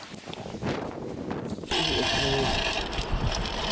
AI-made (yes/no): no